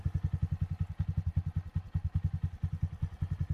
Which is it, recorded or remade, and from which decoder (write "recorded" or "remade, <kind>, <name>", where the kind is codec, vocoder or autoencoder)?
recorded